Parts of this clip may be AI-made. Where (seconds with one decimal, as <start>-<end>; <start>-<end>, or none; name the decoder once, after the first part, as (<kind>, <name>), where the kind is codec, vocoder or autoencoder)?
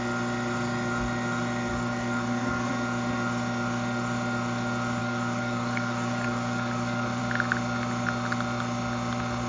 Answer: 1.7-2.7 (codec, DAC); 5.0-7.2